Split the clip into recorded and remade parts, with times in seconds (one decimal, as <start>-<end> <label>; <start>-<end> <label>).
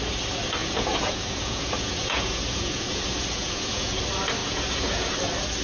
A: 0.0-0.6 recorded; 0.6-4.0 remade; 4.0-4.4 recorded; 4.4-5.1 remade; 5.1-5.6 recorded